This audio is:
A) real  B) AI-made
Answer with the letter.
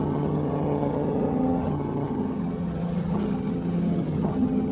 B